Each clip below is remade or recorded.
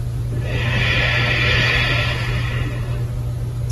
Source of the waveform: recorded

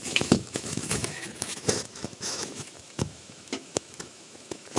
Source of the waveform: remade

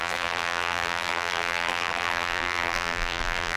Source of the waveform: remade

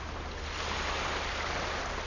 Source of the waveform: recorded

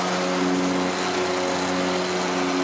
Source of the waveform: recorded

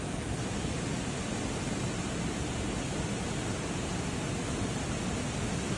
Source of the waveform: recorded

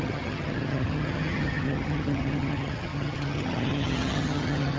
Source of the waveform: remade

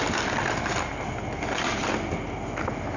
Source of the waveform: recorded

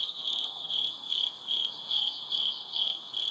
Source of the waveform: remade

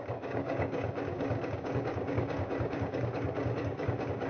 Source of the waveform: remade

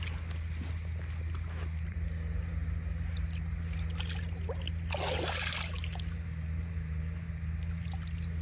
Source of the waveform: recorded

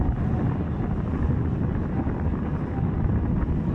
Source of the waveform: recorded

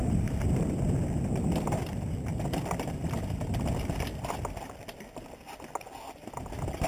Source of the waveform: recorded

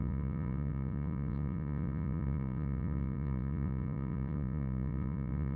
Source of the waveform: remade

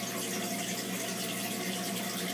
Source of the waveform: recorded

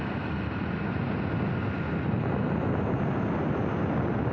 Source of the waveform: recorded